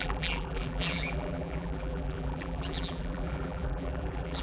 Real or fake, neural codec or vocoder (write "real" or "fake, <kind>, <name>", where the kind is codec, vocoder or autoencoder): fake, vocoder, BigVGAN v2